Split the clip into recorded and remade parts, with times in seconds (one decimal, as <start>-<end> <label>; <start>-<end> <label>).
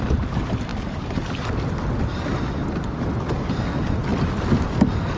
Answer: 0.0-5.2 recorded